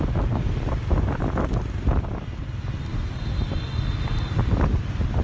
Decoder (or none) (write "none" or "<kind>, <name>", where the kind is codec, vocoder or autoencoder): none